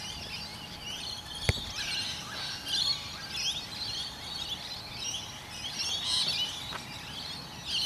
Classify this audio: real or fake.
real